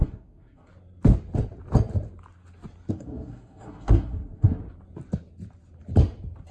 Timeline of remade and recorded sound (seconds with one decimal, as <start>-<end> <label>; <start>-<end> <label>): 0.0-0.7 remade; 0.7-2.9 recorded; 2.9-4.6 remade; 4.6-6.5 recorded